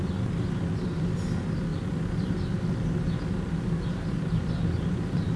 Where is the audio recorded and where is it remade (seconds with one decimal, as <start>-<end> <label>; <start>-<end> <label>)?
0.0-5.4 recorded